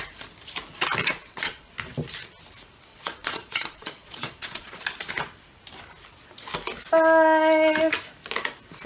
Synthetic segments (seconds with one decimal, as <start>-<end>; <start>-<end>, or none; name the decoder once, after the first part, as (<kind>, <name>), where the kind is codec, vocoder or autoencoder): 1.0-1.7 (vocoder, Vocos); 2.9-4.8